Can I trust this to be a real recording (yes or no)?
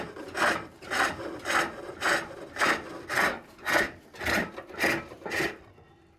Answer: yes